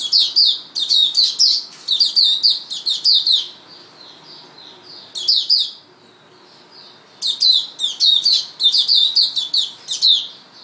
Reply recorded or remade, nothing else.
recorded